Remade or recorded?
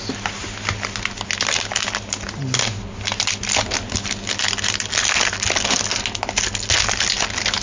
recorded